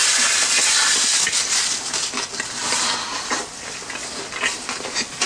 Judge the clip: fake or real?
real